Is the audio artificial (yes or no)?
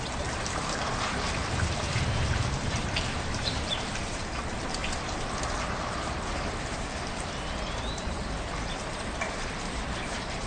yes